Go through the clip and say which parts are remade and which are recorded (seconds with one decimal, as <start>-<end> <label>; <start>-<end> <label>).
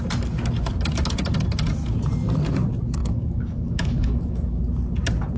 0.0-3.0 recorded; 3.0-4.6 remade; 4.6-5.4 recorded